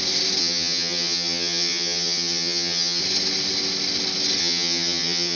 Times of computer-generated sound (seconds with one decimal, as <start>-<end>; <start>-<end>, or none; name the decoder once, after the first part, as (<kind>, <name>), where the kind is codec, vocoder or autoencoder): 0.4-3.0 (vocoder, HiFi-GAN); 4.4-5.4